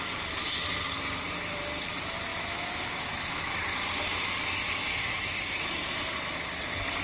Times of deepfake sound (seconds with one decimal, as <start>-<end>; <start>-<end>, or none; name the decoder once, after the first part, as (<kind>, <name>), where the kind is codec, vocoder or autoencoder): 2.3-3.5 (autoencoder, DAC-VAE); 4.8-6.0